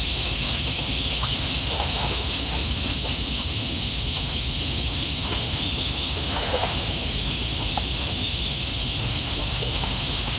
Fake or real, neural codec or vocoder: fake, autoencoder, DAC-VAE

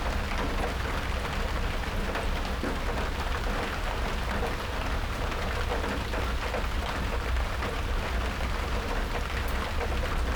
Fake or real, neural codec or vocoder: real